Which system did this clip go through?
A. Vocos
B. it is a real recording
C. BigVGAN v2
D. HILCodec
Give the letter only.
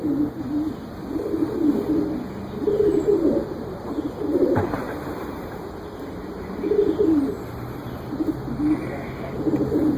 C